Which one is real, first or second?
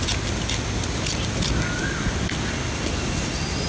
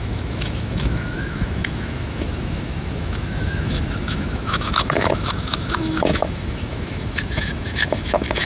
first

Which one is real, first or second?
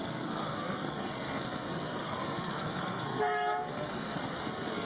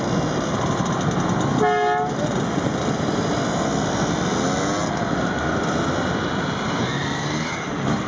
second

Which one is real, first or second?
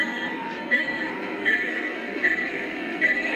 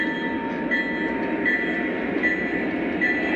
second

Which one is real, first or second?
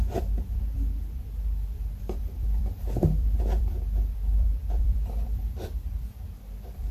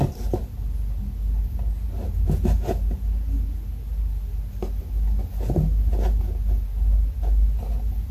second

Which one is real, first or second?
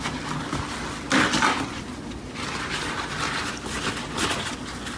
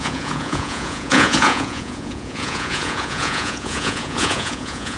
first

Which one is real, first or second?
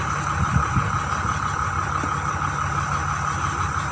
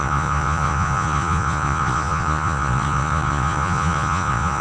first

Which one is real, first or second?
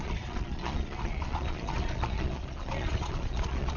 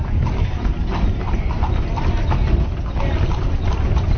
second